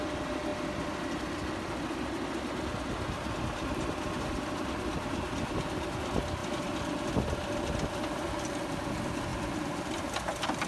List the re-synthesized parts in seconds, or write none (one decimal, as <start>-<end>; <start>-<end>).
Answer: none